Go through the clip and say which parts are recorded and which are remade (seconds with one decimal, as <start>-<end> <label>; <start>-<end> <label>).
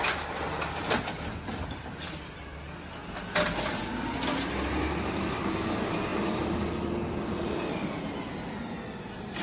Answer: 0.0-9.4 recorded